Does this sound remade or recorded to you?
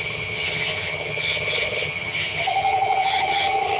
remade